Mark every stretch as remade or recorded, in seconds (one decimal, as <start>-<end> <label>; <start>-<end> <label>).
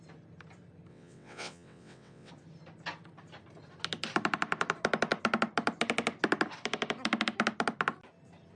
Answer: 0.0-0.9 recorded; 0.9-2.3 remade; 2.3-8.6 recorded